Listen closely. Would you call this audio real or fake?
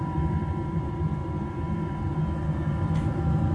fake